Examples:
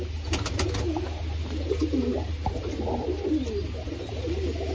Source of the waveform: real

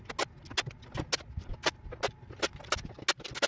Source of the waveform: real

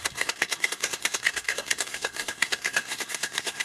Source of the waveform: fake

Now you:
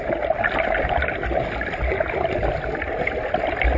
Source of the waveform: real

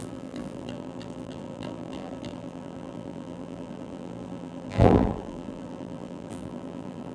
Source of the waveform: fake